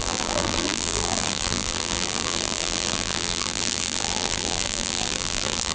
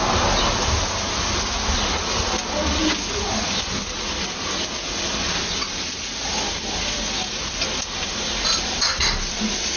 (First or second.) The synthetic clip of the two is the first